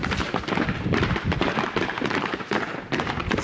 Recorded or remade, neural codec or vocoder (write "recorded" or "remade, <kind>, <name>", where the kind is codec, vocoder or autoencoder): remade, vocoder, BigVGAN v2